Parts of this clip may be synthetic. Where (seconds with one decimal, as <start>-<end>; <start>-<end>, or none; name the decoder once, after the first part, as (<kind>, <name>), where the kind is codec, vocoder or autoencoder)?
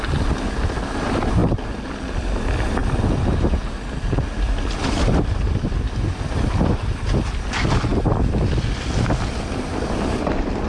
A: none